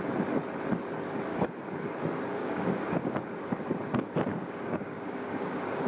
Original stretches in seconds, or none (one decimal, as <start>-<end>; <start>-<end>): 0.0-1.3; 1.9-2.4; 3.1-4.3